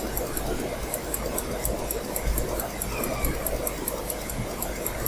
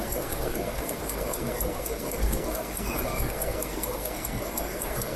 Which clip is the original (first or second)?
first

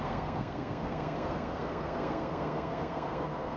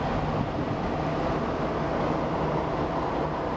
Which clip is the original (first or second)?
second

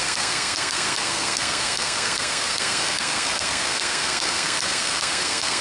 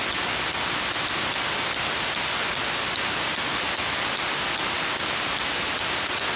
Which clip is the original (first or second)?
second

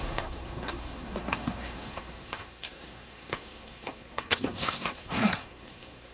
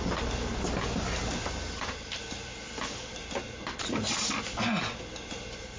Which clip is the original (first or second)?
second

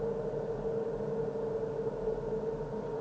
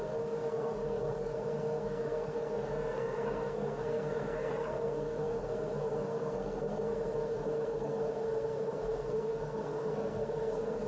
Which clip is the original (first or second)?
first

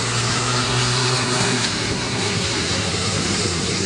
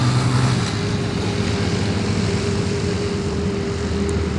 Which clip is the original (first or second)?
second